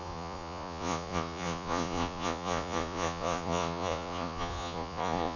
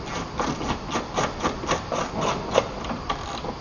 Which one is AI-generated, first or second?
first